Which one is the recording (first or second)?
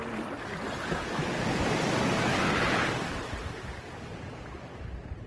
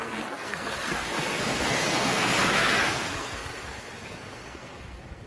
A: first